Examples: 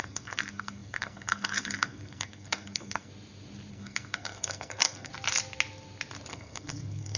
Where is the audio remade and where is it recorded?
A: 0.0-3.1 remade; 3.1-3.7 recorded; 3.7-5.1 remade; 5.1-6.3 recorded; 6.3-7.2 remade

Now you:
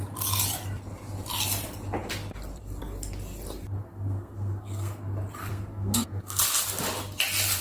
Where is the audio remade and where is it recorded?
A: 0.0-3.8 recorded; 3.8-5.0 remade; 5.0-5.5 recorded; 5.5-6.4 remade; 6.4-7.6 recorded

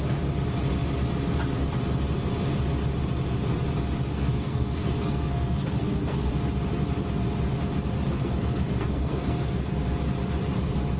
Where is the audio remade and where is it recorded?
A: 0.0-4.1 recorded; 4.1-6.3 remade; 6.3-8.1 recorded; 8.1-9.7 remade; 9.7-11.0 recorded